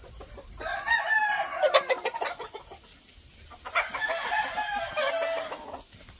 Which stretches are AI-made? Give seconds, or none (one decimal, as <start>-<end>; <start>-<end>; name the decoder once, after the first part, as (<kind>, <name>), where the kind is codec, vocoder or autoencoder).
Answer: none